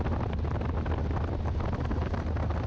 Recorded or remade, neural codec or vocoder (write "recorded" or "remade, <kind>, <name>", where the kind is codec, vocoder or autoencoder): recorded